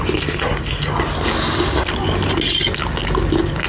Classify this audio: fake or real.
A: real